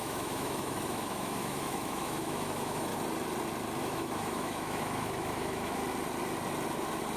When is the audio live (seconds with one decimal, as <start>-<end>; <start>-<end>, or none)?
2.9-3.8; 5.8-7.2